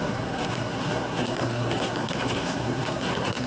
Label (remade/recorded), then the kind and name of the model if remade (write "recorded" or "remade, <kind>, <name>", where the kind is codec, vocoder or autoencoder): remade, codec, SNAC